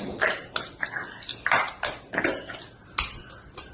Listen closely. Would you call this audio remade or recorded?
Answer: remade